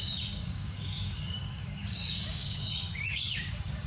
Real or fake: fake